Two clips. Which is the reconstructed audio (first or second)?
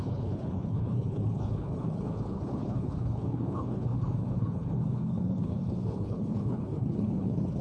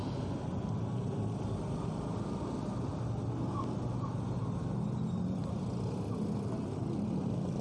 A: first